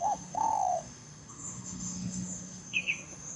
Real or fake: fake